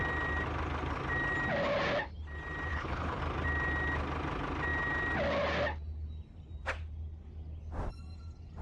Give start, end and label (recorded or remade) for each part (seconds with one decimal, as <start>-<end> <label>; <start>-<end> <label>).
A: 0.0-2.7 recorded; 2.7-3.2 remade; 3.2-8.6 recorded